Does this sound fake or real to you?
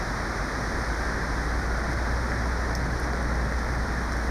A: real